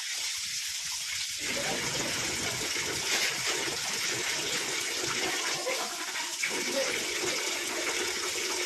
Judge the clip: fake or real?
fake